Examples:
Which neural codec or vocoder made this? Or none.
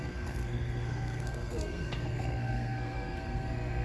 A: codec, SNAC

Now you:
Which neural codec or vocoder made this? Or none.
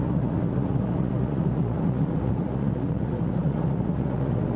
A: vocoder, Vocos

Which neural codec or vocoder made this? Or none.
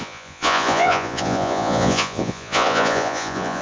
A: vocoder, Vocos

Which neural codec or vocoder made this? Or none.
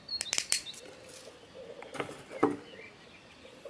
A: none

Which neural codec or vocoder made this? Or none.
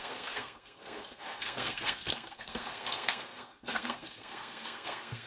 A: codec, SNAC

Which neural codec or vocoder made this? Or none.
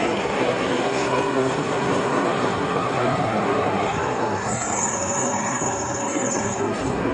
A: codec, SNAC